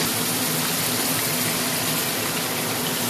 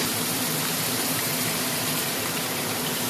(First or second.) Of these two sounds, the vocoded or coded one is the second